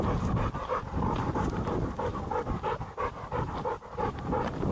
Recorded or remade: remade